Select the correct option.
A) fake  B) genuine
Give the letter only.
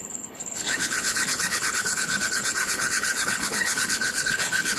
A